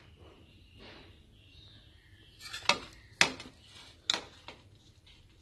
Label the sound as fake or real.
real